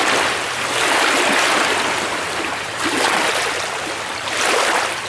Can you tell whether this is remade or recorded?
recorded